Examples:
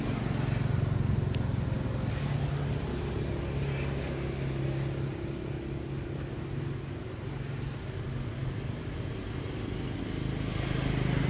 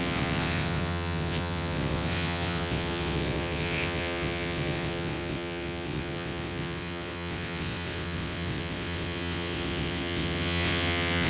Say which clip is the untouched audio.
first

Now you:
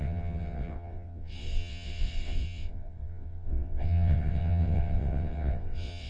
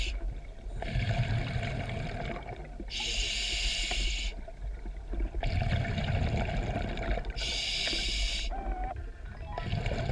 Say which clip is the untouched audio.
second